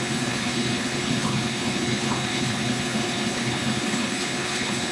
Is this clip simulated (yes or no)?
yes